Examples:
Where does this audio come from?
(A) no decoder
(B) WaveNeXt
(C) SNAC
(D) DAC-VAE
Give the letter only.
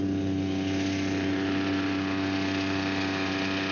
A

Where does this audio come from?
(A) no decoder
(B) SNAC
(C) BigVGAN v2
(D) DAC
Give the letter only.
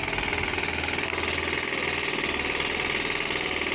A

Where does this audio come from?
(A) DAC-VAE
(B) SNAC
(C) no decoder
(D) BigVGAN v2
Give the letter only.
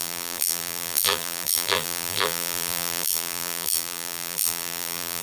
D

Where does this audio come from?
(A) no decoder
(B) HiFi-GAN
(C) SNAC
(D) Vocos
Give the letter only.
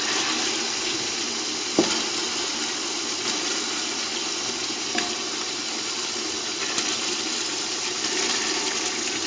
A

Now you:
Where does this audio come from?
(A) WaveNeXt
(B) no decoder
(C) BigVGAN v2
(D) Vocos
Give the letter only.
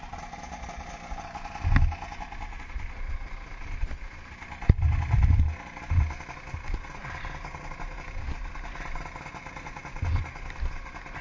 B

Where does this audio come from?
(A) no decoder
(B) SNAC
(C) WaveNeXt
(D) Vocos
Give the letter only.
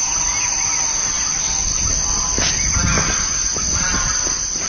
A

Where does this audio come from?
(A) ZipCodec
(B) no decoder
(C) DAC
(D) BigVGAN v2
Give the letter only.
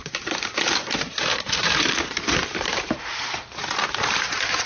D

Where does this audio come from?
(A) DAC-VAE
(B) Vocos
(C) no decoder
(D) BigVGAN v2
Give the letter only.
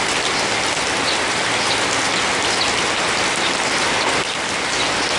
C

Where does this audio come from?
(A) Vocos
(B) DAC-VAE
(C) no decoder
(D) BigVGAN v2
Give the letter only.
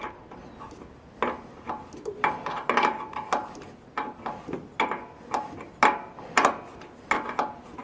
C